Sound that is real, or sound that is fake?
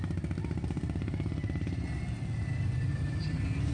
real